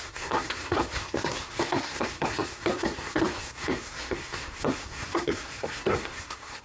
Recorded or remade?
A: remade